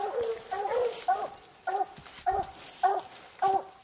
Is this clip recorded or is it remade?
recorded